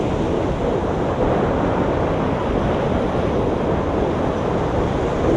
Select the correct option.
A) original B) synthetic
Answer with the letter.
A